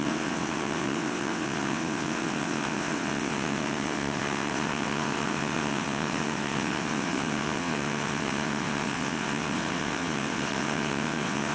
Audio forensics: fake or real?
fake